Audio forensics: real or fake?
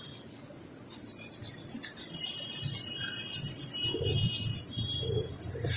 real